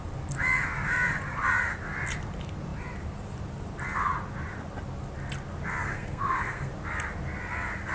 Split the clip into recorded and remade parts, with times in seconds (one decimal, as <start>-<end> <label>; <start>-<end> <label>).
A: 0.0-5.8 recorded; 5.8-6.7 remade; 6.7-7.9 recorded